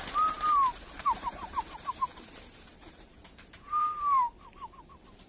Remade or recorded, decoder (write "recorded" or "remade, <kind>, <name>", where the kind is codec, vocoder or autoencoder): remade, vocoder, BigVGAN v2